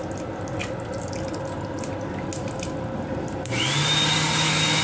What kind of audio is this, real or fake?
real